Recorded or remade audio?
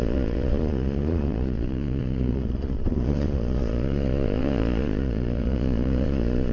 remade